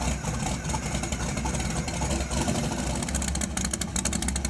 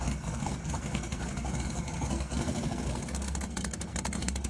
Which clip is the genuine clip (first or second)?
first